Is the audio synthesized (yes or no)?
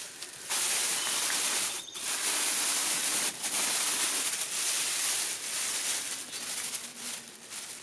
no